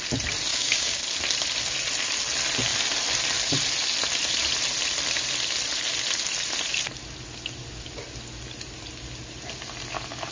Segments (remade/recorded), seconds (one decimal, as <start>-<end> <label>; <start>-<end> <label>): 0.0-0.5 recorded; 0.5-1.0 remade; 1.0-10.3 recorded